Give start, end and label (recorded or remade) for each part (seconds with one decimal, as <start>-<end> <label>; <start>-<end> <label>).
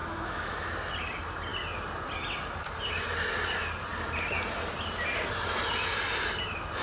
0.0-0.7 remade; 0.7-6.8 recorded